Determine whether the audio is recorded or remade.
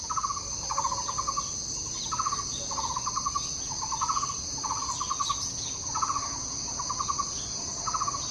recorded